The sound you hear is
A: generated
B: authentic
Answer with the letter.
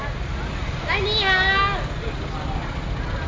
B